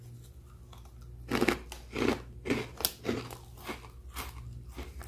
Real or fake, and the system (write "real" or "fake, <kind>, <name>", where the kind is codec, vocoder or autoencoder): real